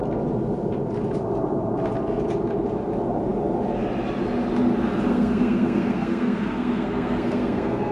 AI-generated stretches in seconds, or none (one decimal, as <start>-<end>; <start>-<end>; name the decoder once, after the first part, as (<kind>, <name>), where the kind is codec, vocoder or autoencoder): 5.1-7.9 (codec, SNAC)